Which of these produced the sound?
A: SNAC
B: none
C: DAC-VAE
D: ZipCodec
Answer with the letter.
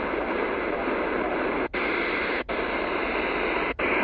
B